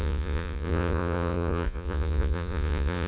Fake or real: fake